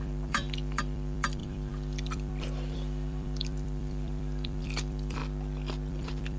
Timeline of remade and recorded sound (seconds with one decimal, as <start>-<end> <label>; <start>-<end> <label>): 0.0-5.2 remade; 5.2-5.9 recorded; 5.9-6.4 remade